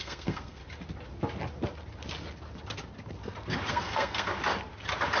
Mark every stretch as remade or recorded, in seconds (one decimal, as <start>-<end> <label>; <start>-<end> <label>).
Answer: 0.0-0.6 remade; 0.6-3.7 recorded; 3.7-4.3 remade; 4.3-5.2 recorded